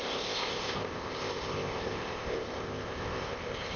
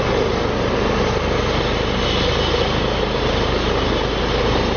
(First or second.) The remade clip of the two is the first